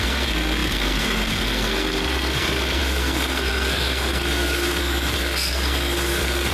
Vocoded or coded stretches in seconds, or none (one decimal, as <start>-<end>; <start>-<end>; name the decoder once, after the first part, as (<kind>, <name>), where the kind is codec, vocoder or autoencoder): 0.0-6.5 (codec, SNAC)